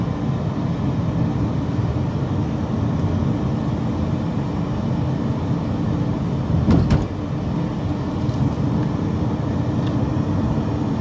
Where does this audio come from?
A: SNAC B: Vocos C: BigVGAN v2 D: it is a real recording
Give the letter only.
D